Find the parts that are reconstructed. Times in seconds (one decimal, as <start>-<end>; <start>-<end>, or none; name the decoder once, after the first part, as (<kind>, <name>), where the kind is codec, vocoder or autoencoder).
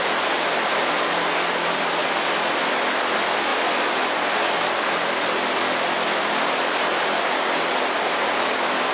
none